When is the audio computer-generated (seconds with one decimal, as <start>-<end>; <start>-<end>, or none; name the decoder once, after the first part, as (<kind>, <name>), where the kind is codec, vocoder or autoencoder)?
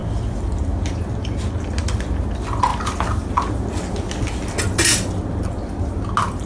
none